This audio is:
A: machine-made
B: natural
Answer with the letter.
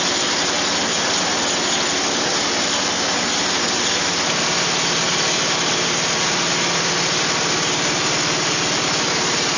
B